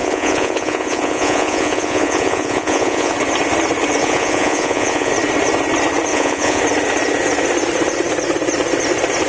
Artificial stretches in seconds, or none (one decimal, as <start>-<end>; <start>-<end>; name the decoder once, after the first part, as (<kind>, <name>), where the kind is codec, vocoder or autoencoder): 0.0-3.1 (vocoder, Vocos); 4.0-5.1; 6.1-6.6